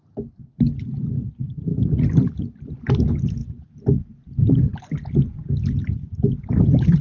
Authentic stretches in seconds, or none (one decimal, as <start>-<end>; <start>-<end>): 0.0-5.3